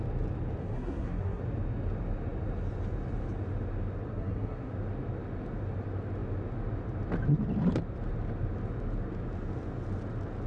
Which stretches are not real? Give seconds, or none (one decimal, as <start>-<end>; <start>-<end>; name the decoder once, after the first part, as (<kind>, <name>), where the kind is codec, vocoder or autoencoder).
0.6-1.4 (codec, SNAC); 4.1-4.7